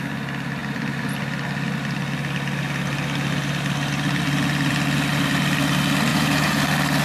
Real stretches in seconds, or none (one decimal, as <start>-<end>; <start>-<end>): 0.0-6.1; 6.6-7.0